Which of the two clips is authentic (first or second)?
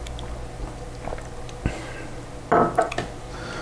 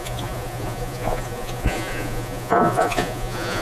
first